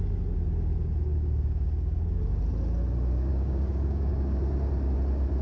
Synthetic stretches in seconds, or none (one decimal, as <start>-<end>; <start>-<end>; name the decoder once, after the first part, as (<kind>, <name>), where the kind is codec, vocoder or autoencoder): 1.1-2.4 (codec, DAC); 3.3-4.4